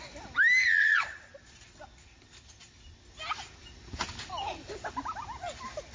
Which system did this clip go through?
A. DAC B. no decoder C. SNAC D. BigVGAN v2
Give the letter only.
B